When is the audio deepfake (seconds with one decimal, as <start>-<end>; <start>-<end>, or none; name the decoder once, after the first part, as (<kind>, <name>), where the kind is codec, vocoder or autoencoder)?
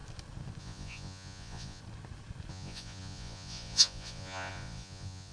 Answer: 0.6-1.8 (vocoder, Vocos); 2.5-5.3